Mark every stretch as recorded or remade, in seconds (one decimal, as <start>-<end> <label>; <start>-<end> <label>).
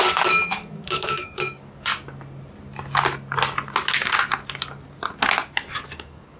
0.0-1.9 remade; 1.9-5.7 recorded; 5.7-6.4 remade